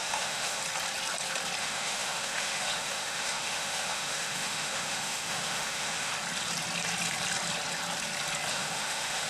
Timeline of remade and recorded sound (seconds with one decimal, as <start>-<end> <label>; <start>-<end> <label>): 0.0-0.6 remade; 0.6-1.6 recorded; 1.6-6.1 remade; 6.1-8.5 recorded; 8.5-9.3 remade